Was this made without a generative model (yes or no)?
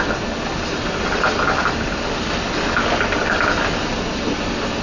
yes